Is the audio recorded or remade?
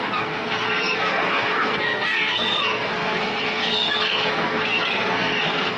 remade